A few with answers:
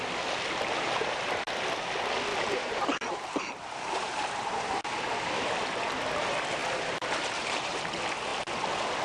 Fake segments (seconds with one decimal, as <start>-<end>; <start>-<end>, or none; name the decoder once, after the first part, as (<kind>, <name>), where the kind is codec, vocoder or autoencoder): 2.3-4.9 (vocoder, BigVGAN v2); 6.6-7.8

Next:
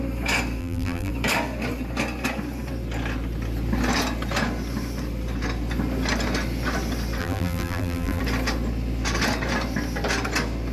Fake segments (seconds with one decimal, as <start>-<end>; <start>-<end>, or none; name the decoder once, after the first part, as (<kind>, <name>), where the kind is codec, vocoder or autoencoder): 0.6-1.1 (vocoder, BigVGAN v2); 7.2-8.2

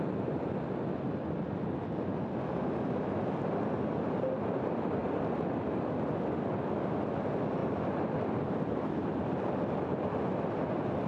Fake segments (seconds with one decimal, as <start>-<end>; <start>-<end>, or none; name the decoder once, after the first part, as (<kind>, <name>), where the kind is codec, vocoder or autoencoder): 5.0-5.5 (vocoder, BigVGAN v2); 7.6-10.2

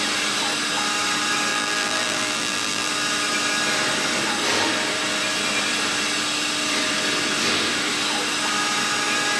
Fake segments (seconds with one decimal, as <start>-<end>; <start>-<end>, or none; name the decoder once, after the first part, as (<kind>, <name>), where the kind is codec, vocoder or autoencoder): 1.5-2.9 (vocoder, BigVGAN v2)

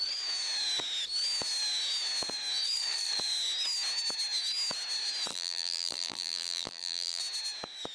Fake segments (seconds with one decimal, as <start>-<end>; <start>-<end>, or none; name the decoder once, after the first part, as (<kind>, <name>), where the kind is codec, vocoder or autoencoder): 5.3-7.2 (vocoder, BigVGAN v2)

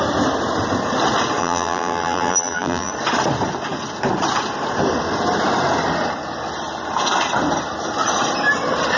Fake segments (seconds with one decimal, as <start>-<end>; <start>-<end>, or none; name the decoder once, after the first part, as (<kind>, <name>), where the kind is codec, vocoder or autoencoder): 1.4-2.9 (vocoder, BigVGAN v2)